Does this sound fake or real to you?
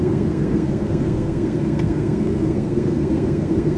fake